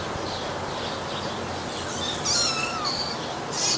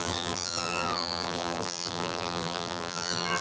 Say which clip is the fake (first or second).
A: second